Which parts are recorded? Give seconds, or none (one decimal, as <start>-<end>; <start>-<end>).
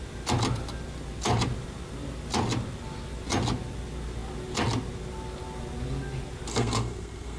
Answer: 0.0-6.5